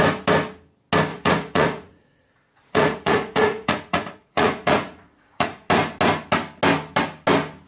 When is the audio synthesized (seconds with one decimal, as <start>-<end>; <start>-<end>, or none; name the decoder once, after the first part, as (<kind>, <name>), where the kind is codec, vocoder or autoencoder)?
1.1-5.7 (vocoder, Vocos)